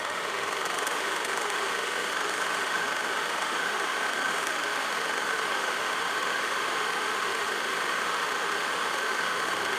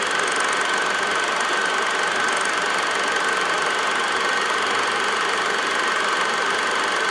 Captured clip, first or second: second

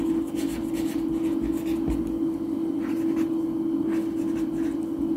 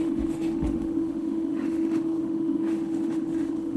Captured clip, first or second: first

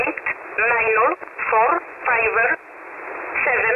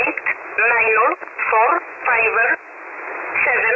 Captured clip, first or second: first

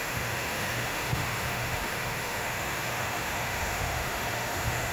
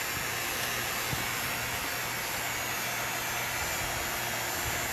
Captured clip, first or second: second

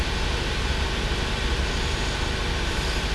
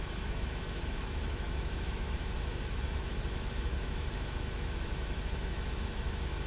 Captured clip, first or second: first